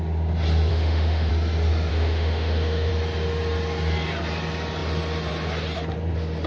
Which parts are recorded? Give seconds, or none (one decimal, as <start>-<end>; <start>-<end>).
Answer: 0.0-0.7; 1.3-1.9; 2.9-6.5